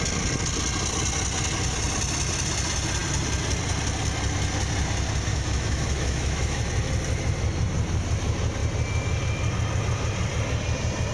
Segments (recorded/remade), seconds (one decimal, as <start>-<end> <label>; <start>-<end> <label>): 0.0-5.3 recorded; 5.3-6.6 remade; 6.6-11.1 recorded